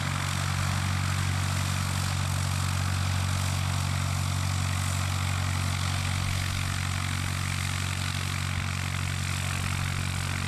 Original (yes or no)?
yes